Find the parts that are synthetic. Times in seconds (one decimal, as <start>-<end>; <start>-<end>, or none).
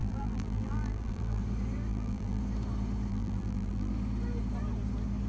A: 0.0-1.4; 1.9-2.4; 3.1-3.9